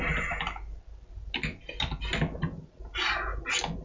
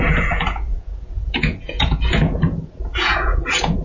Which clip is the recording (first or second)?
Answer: first